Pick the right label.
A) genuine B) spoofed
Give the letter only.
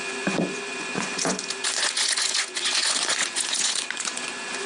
B